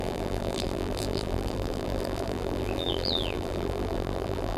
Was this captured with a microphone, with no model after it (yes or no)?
no